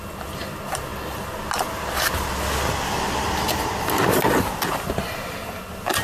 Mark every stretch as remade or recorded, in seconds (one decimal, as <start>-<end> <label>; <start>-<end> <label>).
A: 0.0-6.0 recorded